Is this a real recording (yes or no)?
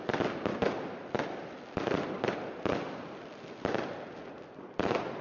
yes